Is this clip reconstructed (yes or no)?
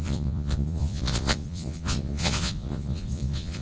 yes